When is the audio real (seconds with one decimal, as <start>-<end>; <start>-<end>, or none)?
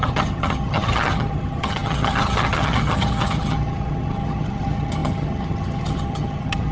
none